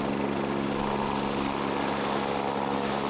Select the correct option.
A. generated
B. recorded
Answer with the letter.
B